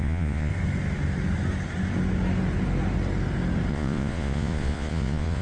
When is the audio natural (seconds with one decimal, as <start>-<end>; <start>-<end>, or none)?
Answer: 0.5-3.7